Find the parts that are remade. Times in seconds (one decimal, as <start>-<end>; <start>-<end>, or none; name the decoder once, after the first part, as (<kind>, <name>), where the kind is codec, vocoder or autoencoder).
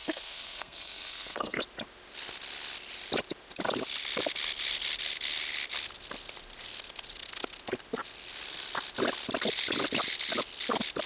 0.0-1.6 (codec, SNAC)